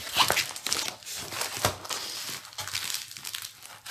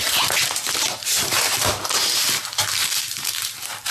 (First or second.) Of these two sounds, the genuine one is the first